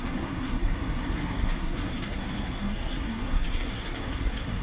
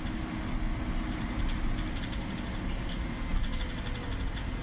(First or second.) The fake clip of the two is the first